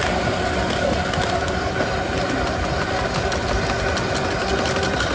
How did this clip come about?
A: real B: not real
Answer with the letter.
A